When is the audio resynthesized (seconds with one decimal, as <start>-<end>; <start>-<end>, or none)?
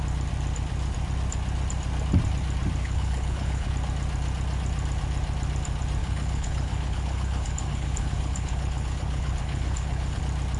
2.8-3.7; 6.0-10.2